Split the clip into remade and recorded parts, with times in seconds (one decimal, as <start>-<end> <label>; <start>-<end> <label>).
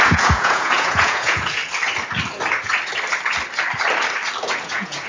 0.0-1.6 remade; 1.6-4.6 recorded; 4.6-5.1 remade